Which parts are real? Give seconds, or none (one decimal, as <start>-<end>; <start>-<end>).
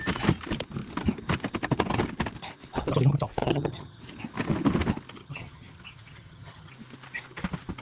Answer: 0.0-3.4; 4.0-5.2; 6.7-7.8